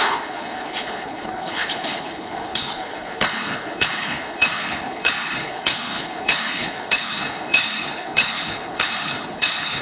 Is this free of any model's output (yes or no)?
no